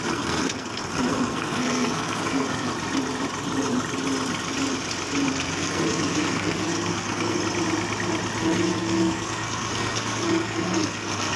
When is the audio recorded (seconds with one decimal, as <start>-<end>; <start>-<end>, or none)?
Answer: 2.7-5.3; 7.4-8.4